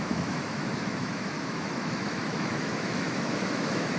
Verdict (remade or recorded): remade